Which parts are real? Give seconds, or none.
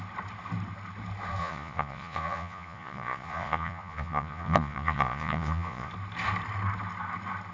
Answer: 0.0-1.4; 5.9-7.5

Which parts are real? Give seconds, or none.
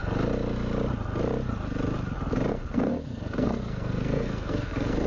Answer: 0.0-2.5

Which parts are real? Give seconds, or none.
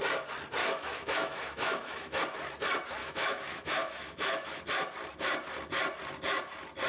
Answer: 0.0-0.6; 2.2-3.0; 4.6-6.9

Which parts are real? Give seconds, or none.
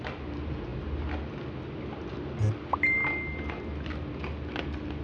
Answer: 0.0-5.0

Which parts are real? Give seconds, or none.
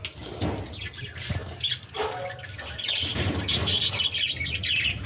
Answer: 0.0-5.1